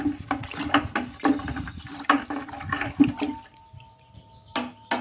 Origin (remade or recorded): recorded